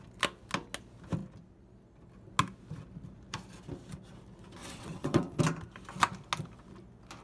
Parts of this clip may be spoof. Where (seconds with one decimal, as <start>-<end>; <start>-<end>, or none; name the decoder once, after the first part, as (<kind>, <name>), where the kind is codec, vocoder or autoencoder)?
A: 4.6-5.4 (vocoder, WaveNeXt)